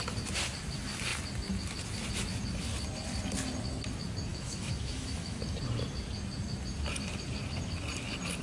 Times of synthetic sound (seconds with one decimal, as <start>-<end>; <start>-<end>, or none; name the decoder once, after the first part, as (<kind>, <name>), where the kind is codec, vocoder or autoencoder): 4.3-5.4 (autoencoder, DAC-VAE)